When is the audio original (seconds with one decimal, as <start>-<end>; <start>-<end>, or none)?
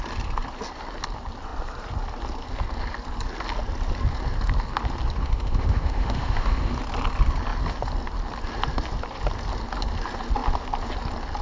0.0-5.2; 6.8-11.4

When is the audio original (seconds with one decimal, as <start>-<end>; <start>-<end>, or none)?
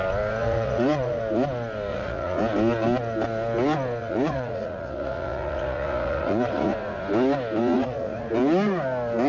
0.0-0.4; 1.2-1.9; 2.4-4.0; 7.0-7.6; 8.3-9.3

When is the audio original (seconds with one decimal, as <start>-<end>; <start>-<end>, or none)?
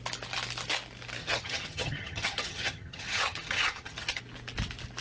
0.0-1.2; 4.2-5.0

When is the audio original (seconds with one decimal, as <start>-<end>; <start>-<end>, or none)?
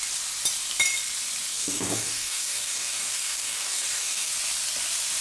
0.0-1.5; 4.3-5.2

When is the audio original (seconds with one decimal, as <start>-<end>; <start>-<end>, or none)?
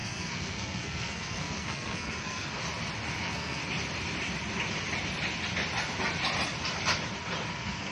2.6-3.2; 3.6-7.5